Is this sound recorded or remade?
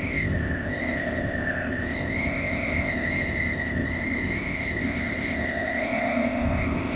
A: remade